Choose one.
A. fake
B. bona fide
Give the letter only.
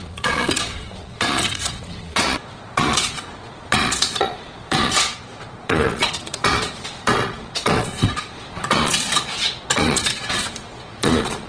A